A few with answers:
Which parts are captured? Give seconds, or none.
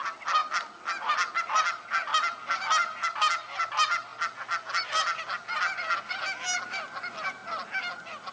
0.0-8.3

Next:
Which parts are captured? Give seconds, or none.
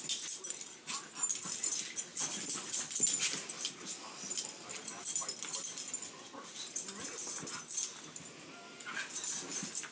0.0-9.9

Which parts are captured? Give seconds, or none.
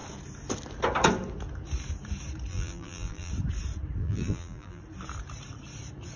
0.0-2.5; 3.3-4.0; 4.8-6.2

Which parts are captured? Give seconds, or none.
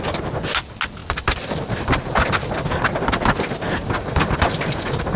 0.0-1.0; 2.3-3.8